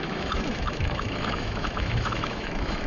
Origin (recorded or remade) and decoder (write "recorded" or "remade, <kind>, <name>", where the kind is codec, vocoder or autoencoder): remade, autoencoder, DAC-VAE